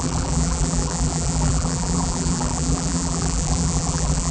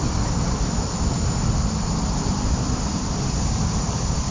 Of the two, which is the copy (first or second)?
first